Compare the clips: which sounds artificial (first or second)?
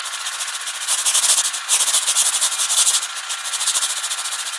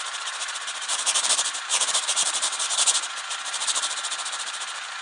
second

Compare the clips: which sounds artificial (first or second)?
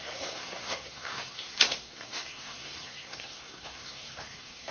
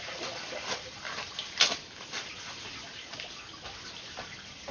first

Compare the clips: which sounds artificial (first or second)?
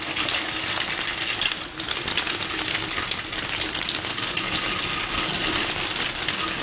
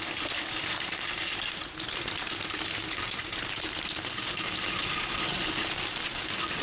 second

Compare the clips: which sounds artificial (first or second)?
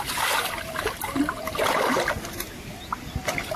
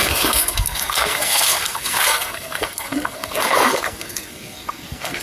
second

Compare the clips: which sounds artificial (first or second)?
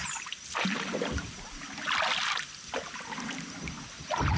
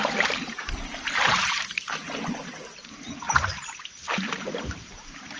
second